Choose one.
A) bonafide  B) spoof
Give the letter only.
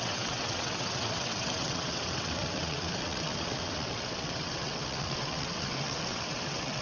B